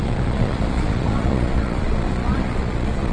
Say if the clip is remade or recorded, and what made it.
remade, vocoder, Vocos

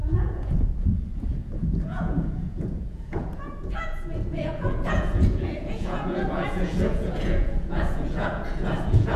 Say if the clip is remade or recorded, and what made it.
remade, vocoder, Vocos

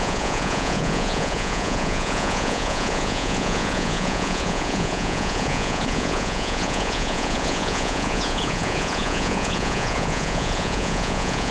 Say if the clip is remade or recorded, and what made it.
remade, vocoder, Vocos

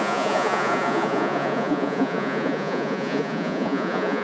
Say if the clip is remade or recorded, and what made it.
remade, vocoder, Vocos